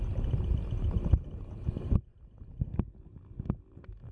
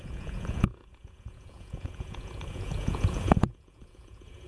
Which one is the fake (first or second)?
second